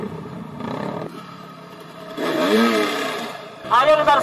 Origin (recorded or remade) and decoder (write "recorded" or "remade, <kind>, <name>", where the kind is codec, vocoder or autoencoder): remade, vocoder, BigVGAN v2